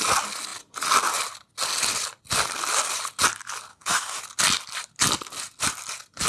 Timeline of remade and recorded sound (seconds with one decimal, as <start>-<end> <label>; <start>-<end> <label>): 0.0-3.7 recorded; 3.7-4.2 remade; 4.2-6.3 recorded